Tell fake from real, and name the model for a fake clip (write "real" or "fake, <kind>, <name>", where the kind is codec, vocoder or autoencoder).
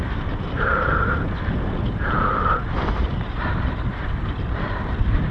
fake, vocoder, BigVGAN v2